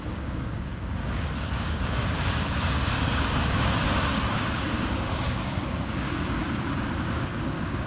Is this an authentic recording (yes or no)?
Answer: no